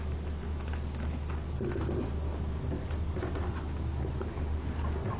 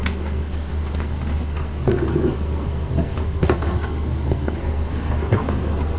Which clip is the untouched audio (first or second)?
first